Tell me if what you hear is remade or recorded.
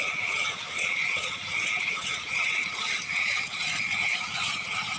remade